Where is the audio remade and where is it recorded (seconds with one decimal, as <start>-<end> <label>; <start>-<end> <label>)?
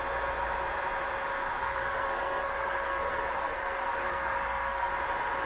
0.0-1.6 recorded; 1.6-4.9 remade; 4.9-5.5 recorded